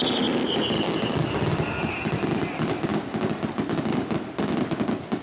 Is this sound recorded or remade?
recorded